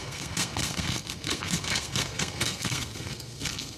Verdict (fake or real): fake